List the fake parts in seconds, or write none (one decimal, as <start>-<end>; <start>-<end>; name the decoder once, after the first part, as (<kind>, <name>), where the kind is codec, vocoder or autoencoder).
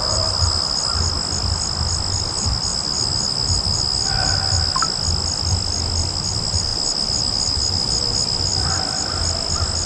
none